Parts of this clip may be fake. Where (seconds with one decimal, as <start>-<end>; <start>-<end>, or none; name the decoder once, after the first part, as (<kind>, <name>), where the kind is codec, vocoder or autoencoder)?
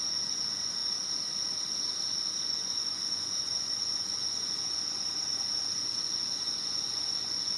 0.0-0.8 (vocoder, Vocos); 2.3-7.6